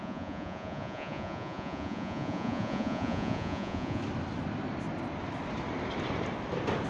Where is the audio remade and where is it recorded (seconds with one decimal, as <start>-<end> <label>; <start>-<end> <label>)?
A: 0.0-4.0 remade; 4.0-6.9 recorded